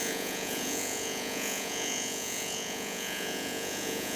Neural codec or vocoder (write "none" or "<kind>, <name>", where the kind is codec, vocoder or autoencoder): vocoder, Vocos